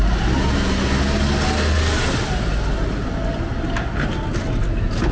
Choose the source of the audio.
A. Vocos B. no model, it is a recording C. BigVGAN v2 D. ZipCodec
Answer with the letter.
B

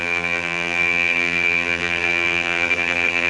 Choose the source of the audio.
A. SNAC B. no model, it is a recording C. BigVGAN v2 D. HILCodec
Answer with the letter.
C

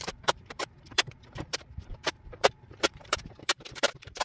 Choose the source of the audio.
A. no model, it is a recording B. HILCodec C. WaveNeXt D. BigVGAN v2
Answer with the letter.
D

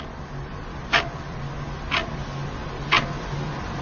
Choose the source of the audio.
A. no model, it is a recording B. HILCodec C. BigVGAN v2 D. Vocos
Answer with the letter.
A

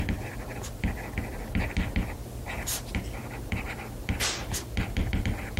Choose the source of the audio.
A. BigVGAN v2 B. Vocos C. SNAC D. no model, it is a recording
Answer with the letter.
D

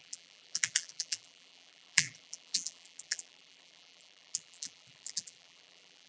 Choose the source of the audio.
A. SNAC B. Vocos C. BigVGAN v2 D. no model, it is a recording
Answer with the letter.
C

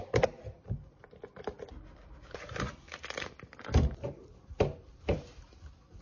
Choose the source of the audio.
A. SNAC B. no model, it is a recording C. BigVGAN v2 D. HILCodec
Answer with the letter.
C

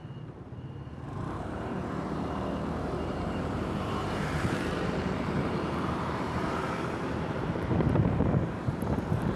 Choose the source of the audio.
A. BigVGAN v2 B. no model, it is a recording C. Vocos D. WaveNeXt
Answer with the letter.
A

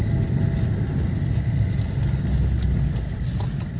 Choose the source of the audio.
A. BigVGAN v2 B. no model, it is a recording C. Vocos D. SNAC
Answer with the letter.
B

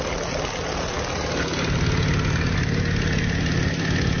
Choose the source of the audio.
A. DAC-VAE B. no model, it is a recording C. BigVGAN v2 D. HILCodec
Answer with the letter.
B